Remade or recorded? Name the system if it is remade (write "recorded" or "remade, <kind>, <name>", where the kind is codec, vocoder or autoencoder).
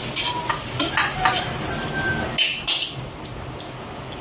recorded